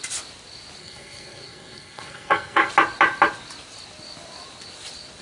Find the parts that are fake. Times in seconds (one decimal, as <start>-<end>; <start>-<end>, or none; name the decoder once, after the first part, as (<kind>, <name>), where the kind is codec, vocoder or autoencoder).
0.8-2.7 (codec, SNAC)